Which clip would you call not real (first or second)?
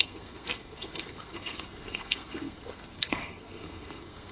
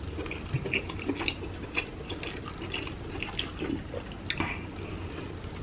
first